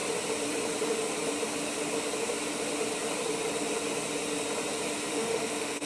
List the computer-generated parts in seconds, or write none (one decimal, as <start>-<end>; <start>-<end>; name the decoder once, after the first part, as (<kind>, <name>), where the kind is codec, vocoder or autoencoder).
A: 5.1-5.9 (autoencoder, DAC-VAE)